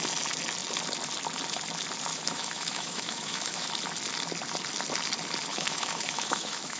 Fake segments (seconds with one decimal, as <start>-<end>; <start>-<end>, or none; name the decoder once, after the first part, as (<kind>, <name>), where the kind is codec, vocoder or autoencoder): 2.1-3.7 (autoencoder, DAC-VAE); 5.5-6.8